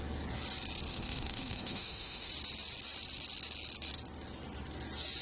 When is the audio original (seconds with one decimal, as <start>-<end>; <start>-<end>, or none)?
0.0-0.9; 2.3-5.2